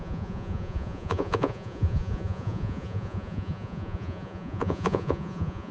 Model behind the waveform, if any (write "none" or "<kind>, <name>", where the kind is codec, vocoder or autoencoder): vocoder, Vocos